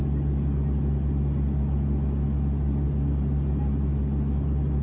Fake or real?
real